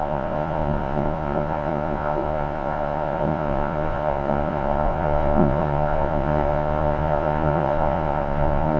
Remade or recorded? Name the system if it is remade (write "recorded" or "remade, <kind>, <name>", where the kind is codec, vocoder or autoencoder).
remade, vocoder, Vocos